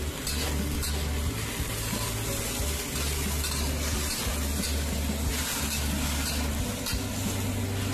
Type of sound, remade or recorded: recorded